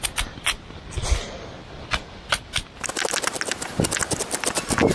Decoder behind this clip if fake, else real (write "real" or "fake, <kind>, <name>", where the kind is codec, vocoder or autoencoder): real